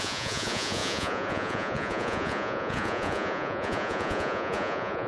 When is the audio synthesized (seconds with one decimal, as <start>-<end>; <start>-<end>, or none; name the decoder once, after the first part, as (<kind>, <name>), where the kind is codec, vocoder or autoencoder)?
0.0-5.1 (vocoder, Vocos)